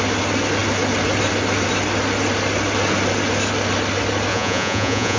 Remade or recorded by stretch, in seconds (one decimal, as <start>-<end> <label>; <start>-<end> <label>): 0.0-4.3 recorded; 4.3-5.2 remade

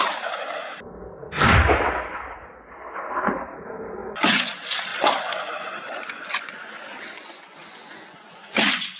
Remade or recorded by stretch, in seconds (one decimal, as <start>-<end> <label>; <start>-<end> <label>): 0.0-4.0 recorded; 4.0-4.5 remade; 4.5-4.9 recorded; 4.9-9.0 remade

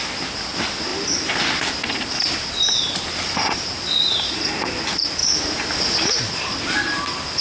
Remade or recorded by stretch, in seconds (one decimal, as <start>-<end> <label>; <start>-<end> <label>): 0.0-7.4 recorded